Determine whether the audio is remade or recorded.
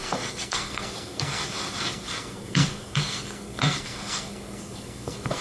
remade